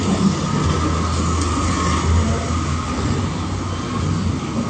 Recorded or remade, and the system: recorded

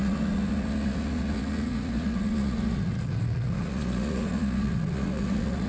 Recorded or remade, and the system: remade, vocoder, Vocos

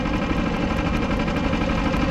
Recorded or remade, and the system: recorded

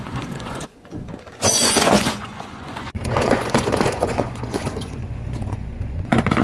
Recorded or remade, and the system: remade, vocoder, Vocos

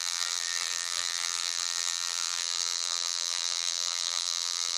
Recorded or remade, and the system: remade, vocoder, BigVGAN v2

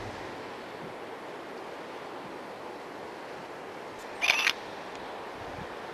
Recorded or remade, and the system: recorded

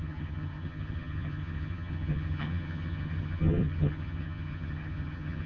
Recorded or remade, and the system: remade, vocoder, HiFi-GAN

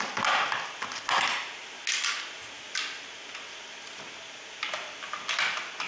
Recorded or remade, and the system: recorded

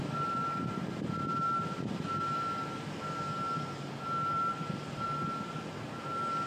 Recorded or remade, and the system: recorded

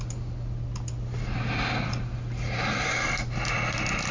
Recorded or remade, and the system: recorded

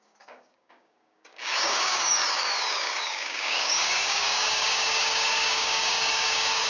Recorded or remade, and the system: remade, codec, DAC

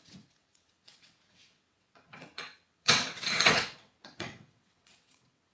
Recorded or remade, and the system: remade, vocoder, WaveNeXt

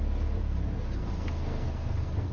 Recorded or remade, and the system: remade, codec, SNAC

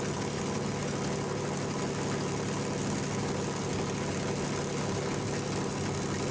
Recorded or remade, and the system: recorded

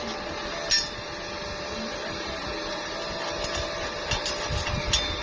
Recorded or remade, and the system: recorded